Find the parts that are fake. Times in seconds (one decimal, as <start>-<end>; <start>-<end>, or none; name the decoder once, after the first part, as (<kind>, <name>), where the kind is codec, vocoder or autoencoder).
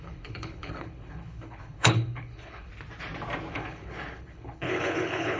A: 0.0-2.7 (codec, HILCodec); 3.5-5.4